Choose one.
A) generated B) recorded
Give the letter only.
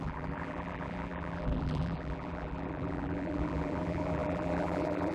A